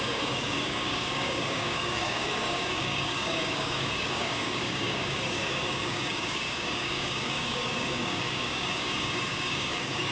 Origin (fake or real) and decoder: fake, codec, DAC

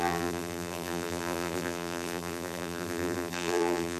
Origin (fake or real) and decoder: fake, vocoder, BigVGAN v2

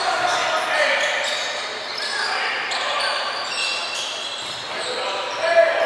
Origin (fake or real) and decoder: real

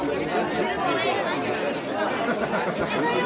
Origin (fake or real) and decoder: real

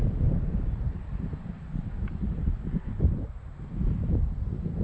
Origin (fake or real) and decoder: fake, vocoder, BigVGAN v2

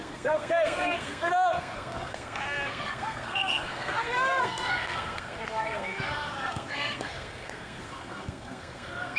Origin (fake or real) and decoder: fake, codec, SNAC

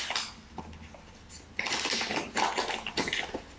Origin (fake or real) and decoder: real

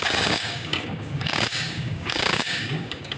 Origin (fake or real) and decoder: fake, codec, DAC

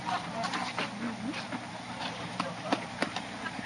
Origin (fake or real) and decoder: fake, vocoder, BigVGAN v2